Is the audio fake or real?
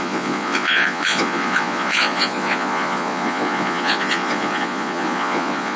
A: fake